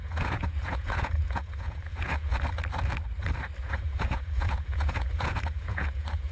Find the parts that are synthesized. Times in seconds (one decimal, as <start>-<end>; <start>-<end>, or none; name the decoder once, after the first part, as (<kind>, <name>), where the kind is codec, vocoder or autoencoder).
0.0-2.3 (vocoder, Vocos); 3.6-6.3